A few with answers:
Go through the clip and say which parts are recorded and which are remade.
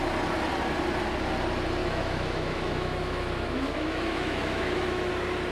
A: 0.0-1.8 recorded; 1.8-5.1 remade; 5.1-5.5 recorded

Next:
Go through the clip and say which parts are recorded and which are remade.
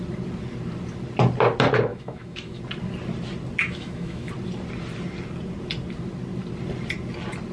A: 0.0-1.9 recorded; 1.9-2.6 remade; 2.6-3.6 recorded; 3.6-4.3 remade; 4.3-7.5 recorded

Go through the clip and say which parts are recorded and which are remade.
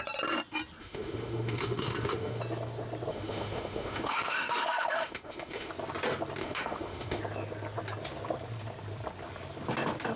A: 0.0-0.8 recorded; 0.8-2.4 remade; 2.4-3.1 recorded; 3.1-5.7 remade; 5.7-6.4 recorded; 6.4-7.2 remade; 7.2-10.2 recorded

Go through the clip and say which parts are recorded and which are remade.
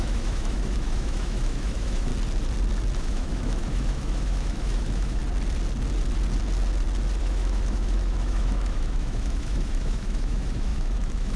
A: 0.0-2.1 remade; 2.1-3.0 recorded; 3.0-5.2 remade; 5.2-7.2 recorded; 7.2-11.4 remade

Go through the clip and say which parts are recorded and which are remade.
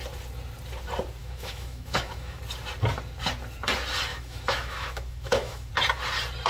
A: 0.0-1.2 recorded; 1.2-2.4 remade; 2.4-4.1 recorded; 4.1-5.7 remade; 5.7-6.5 recorded